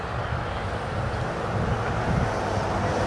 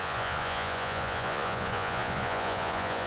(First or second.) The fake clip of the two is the second